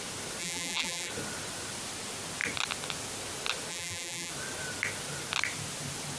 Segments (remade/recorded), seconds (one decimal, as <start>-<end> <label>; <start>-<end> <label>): 0.0-0.4 recorded; 0.4-1.1 remade; 1.1-3.7 recorded; 3.7-4.3 remade; 4.3-6.2 recorded